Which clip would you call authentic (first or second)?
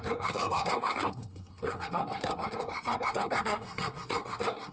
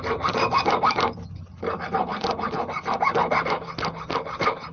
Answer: second